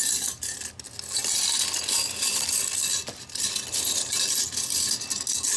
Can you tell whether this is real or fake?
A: real